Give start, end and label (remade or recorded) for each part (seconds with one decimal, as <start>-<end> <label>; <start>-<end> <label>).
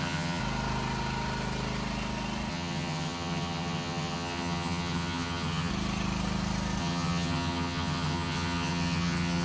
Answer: 0.0-0.4 remade; 0.4-2.5 recorded; 2.5-5.7 remade; 5.7-6.8 recorded; 6.8-9.4 remade